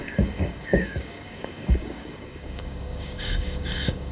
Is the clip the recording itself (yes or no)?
no